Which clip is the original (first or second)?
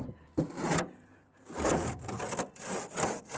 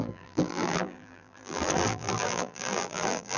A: first